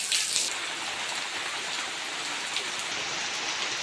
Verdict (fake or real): real